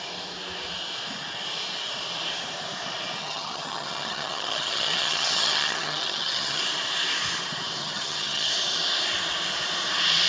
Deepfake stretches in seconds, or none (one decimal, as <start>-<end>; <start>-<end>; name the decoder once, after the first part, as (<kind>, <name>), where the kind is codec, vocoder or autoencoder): 3.2-6.6 (vocoder, HiFi-GAN); 7.8-8.5